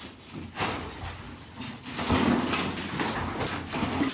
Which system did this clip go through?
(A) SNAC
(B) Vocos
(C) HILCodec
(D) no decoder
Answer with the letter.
D